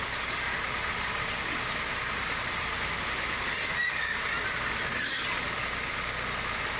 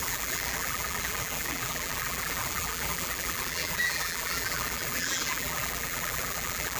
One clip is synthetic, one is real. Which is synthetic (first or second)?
second